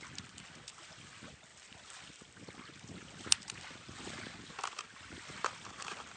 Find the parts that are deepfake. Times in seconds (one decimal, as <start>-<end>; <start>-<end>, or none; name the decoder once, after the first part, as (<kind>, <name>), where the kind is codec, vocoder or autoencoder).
none